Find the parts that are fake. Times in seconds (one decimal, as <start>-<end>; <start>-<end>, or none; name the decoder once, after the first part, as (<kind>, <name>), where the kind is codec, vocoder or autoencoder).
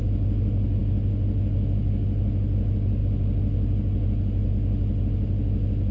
none